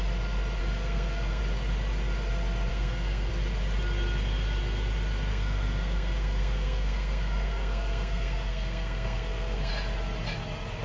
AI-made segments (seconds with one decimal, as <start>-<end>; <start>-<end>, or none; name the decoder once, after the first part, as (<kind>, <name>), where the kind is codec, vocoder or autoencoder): 0.6-1.4 (codec, SNAC); 2.7-3.3; 5.3-9.7